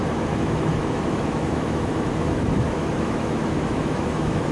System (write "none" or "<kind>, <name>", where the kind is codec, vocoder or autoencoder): autoencoder, DAC-VAE